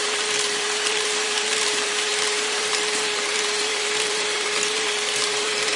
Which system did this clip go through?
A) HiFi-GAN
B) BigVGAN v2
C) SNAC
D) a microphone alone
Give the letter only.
B